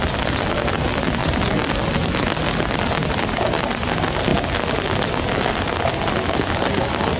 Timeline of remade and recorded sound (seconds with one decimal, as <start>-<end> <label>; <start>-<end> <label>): 0.0-1.2 recorded; 1.2-2.4 remade; 2.4-7.2 recorded